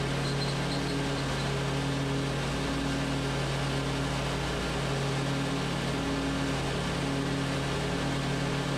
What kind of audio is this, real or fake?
real